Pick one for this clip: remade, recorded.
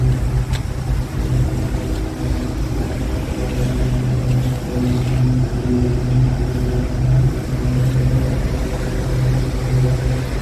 recorded